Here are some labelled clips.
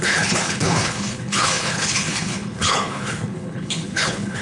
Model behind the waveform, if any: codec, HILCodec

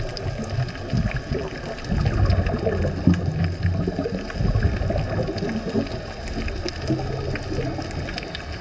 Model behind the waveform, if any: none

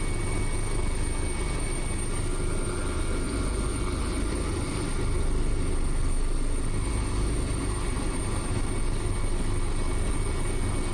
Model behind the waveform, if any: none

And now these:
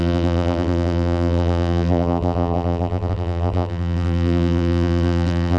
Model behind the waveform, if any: vocoder, BigVGAN v2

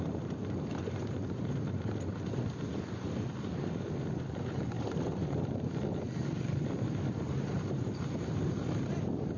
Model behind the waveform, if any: vocoder, BigVGAN v2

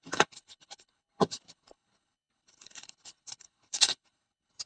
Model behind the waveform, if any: codec, HILCodec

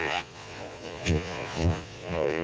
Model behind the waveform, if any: vocoder, Vocos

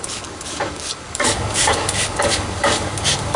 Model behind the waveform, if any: codec, DAC